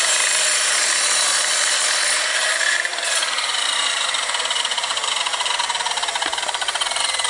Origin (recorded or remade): remade